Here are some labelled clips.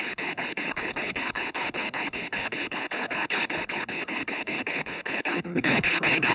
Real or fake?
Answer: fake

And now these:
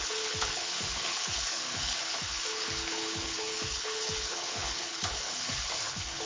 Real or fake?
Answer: fake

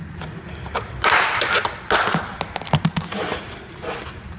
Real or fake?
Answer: real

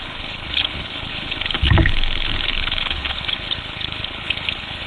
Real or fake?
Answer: fake